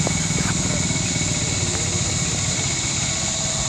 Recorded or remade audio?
recorded